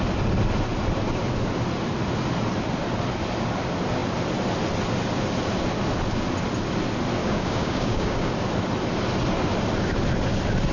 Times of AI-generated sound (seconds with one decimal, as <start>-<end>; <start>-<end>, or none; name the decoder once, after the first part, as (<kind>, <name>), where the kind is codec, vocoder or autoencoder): 7.2-8.3 (codec, DAC)